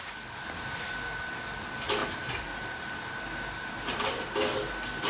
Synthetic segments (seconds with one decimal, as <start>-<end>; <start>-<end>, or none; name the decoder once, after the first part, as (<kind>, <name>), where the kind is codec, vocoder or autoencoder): none